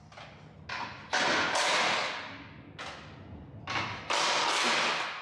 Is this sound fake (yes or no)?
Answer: no